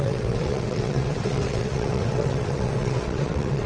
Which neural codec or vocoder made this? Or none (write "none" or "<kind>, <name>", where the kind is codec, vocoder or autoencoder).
vocoder, WaveNeXt